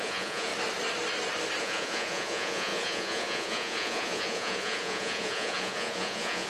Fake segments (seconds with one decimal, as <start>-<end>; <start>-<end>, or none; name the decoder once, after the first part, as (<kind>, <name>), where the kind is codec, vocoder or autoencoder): 0.0-0.5 (vocoder, Vocos); 1.6-6.5